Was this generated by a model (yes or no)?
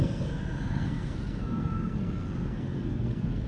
yes